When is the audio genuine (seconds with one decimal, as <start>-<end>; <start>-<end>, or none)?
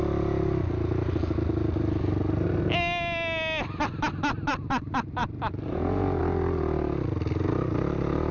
0.0-5.2; 6.2-8.3